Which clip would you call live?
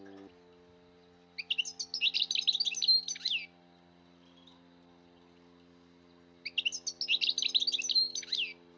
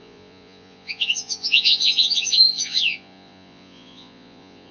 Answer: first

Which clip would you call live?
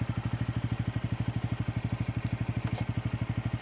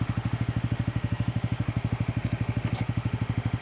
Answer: first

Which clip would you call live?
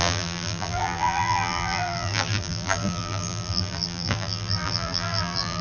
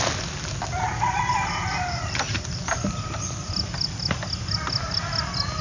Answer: second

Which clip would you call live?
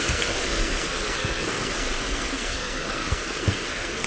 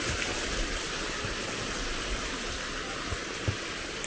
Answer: second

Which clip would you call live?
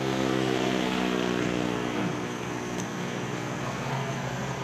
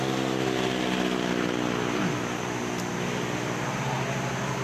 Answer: second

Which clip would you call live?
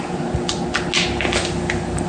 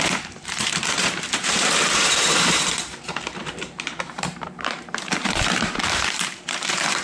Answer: first